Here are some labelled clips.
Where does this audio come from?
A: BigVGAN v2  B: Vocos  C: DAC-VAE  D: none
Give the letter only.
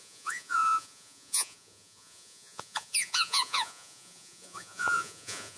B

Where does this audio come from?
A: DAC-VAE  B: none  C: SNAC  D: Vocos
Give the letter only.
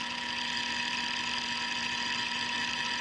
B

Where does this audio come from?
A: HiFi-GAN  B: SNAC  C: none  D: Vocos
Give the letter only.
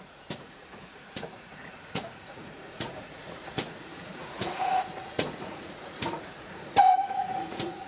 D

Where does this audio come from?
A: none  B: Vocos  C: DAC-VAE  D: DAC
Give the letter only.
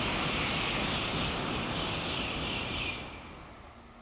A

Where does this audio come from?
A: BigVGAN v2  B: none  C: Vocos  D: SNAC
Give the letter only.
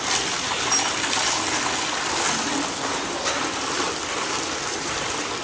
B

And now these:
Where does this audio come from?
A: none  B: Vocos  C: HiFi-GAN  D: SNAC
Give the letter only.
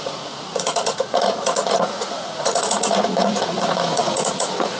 B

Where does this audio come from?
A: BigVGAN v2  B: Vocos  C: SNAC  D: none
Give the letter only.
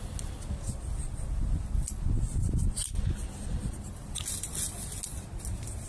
D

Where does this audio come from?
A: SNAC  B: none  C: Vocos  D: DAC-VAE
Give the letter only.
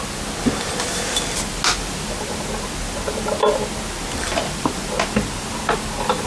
B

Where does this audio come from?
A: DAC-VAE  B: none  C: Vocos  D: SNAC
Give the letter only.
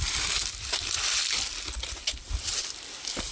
B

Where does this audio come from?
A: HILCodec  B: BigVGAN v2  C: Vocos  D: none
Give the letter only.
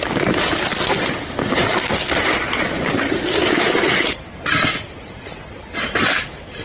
D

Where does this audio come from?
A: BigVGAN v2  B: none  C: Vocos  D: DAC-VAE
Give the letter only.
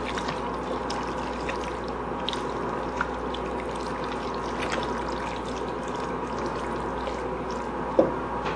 B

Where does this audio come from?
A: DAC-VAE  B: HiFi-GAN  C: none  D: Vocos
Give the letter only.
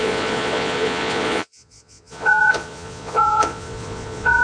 D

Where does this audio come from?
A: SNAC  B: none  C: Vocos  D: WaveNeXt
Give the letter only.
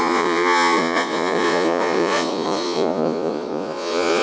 C